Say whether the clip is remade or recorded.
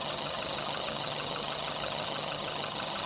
remade